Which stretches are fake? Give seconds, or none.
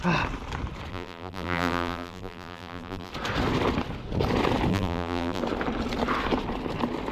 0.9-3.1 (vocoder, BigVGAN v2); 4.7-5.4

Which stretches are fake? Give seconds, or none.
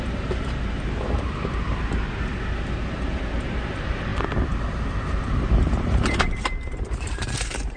0.0-4.1 (vocoder, BigVGAN v2); 4.9-7.8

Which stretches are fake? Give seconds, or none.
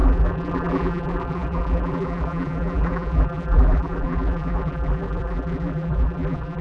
0.0-6.6 (vocoder, BigVGAN v2)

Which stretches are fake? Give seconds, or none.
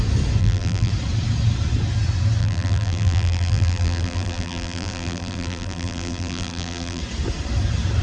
0.4-0.9 (vocoder, BigVGAN v2); 2.4-7.0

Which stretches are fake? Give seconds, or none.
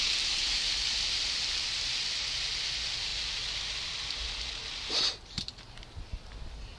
none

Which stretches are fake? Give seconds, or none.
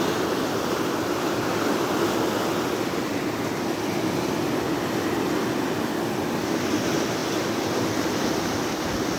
none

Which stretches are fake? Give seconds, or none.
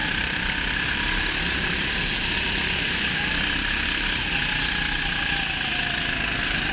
0.0-3.3 (vocoder, BigVGAN v2)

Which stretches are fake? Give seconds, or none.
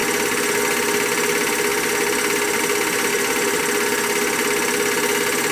3.1-3.6 (vocoder, BigVGAN v2)